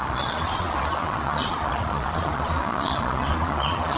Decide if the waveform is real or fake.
fake